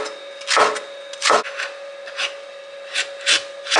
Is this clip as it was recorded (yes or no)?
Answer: yes